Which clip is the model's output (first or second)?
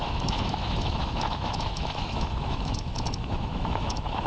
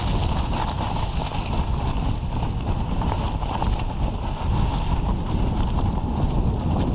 first